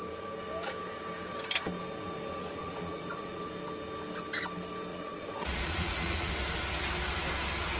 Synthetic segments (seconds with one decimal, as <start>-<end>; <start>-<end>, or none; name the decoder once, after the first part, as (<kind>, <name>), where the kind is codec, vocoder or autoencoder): 2.4-3.5 (vocoder, Vocos); 4.9-6.3